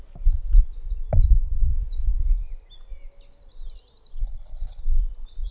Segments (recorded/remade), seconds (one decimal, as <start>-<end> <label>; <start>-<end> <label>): 0.0-4.2 recorded; 4.2-4.8 remade; 4.8-5.5 recorded